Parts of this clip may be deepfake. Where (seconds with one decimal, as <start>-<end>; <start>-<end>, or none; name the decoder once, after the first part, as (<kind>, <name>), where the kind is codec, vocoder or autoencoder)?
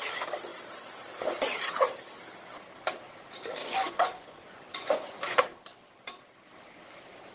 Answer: 3.6-5.4 (vocoder, Vocos)